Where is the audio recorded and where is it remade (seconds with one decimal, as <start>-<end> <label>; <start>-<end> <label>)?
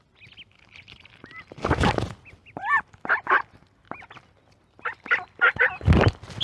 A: 0.0-6.4 recorded